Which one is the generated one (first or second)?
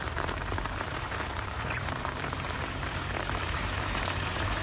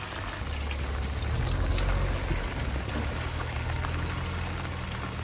first